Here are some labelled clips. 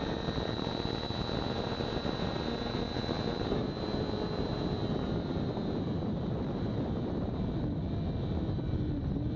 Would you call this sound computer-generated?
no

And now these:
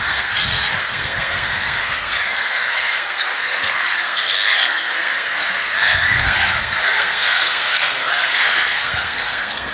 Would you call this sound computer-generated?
yes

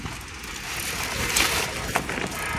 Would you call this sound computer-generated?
no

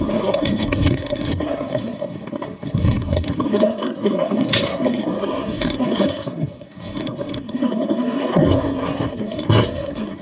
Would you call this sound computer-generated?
yes